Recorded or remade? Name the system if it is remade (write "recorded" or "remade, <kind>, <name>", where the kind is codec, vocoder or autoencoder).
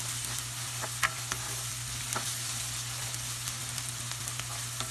recorded